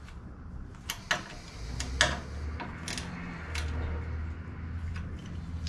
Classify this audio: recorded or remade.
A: recorded